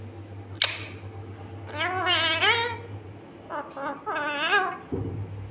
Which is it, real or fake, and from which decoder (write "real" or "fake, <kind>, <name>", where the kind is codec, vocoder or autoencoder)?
real